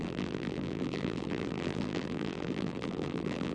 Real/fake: fake